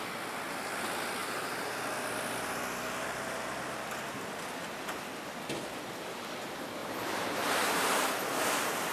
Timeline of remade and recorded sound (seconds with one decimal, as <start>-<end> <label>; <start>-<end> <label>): 0.0-1.2 recorded; 1.2-1.8 remade; 1.8-6.8 recorded; 6.8-8.1 remade; 8.1-8.9 recorded